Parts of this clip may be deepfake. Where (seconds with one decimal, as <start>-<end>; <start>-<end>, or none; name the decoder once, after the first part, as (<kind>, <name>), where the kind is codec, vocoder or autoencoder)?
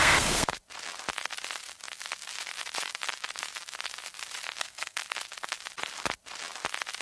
0.0-0.6 (codec, SNAC); 4.6-5.0